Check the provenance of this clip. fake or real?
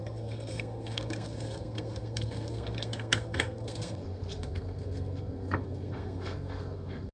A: fake